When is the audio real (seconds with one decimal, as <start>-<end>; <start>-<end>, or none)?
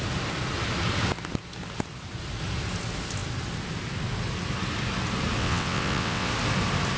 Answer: 0.0-5.4; 6.3-7.0